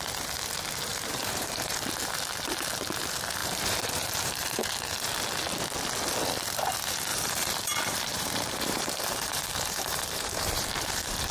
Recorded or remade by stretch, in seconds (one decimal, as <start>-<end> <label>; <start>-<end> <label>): 0.0-0.9 recorded; 0.9-1.8 remade; 1.8-3.4 recorded; 3.4-4.6 remade; 4.6-7.1 recorded; 7.1-11.3 remade